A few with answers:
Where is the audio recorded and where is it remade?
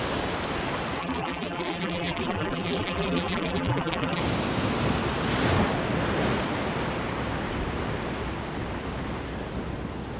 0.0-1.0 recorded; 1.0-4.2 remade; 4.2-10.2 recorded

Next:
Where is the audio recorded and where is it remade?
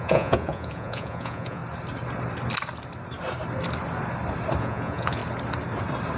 0.0-1.6 remade; 1.6-4.6 recorded; 4.6-5.2 remade; 5.2-6.2 recorded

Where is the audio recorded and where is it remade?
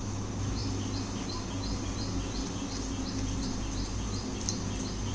0.0-5.1 recorded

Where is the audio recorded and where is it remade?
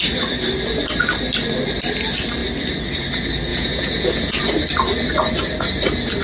0.0-3.5 recorded; 3.5-4.4 remade; 4.4-6.2 recorded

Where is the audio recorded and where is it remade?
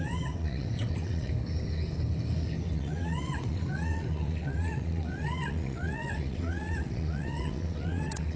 0.0-1.3 remade; 1.3-2.7 recorded; 2.7-8.4 remade